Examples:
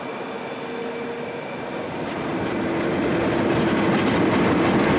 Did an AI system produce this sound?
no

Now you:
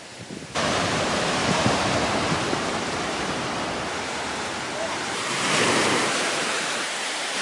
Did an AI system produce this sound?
yes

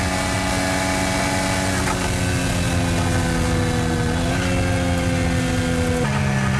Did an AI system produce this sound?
no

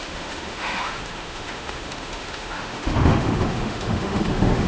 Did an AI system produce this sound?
yes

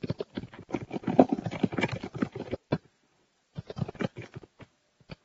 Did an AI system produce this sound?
no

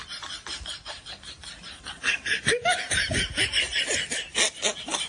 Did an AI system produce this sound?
no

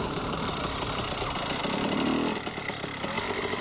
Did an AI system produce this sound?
no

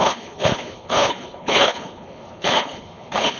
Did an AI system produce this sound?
yes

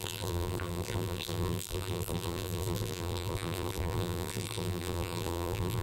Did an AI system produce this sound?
yes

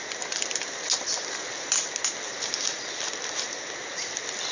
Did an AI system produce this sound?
no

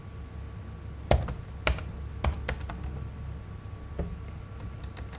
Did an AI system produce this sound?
no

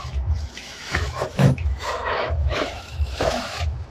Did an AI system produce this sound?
yes